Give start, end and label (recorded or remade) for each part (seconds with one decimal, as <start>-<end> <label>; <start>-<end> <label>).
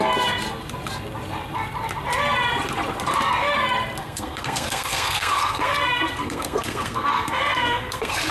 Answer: 0.0-4.0 recorded; 4.0-8.3 remade